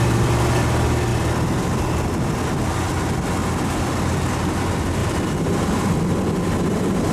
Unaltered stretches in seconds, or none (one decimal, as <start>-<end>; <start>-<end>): 0.0-1.1; 1.8-5.0; 6.0-7.1